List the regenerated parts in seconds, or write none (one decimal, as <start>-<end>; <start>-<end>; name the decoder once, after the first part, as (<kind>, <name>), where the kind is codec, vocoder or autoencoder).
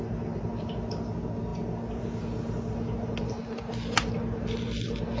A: none